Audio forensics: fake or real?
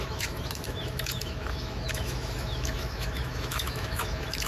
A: fake